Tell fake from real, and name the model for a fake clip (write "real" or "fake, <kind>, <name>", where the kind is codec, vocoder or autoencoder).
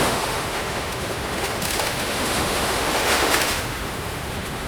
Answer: fake, autoencoder, DAC-VAE